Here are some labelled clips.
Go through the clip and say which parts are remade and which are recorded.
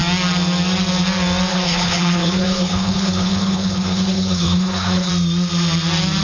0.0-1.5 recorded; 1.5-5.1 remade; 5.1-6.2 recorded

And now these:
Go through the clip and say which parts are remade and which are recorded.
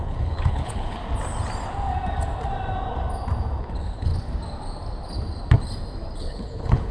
0.0-1.0 remade; 1.0-3.6 recorded; 3.6-4.1 remade; 4.1-6.2 recorded; 6.2-6.9 remade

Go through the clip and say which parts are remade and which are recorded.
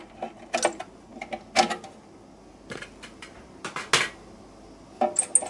0.0-5.5 recorded